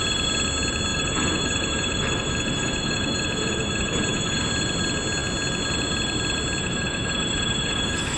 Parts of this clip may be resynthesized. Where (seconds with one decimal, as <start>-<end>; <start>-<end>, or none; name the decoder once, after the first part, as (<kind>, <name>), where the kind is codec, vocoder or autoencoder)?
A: 0.9-4.4 (autoencoder, DAC-VAE); 6.6-8.2